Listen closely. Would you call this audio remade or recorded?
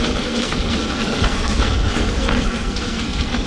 remade